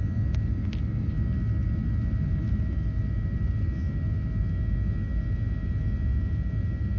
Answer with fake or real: real